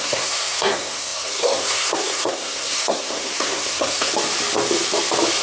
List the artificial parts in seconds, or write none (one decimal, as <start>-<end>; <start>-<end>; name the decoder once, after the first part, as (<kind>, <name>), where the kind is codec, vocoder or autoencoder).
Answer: 0.0-4.1 (codec, SNAC)